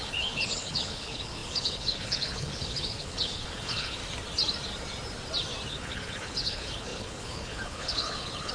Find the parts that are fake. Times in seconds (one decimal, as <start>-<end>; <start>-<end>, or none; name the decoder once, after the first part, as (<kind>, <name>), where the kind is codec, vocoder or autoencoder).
0.0-4.0 (codec, HILCodec); 5.7-8.5